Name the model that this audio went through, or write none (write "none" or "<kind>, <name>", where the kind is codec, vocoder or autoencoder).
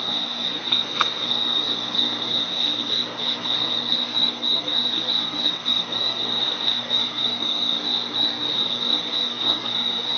codec, SNAC